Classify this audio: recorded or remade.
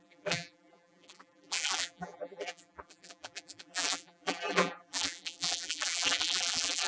remade